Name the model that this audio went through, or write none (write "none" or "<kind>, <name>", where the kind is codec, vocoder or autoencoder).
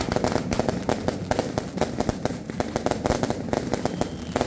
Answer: none